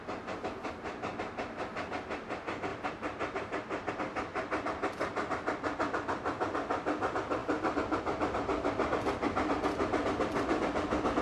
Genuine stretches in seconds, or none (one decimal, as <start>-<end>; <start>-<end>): 0.0-2.7; 3.9-7.4; 8.0-11.2